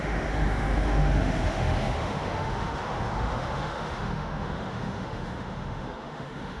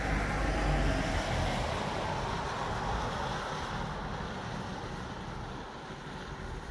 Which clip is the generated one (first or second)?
first